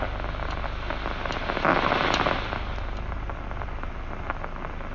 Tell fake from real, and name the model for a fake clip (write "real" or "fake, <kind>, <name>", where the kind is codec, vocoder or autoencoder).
real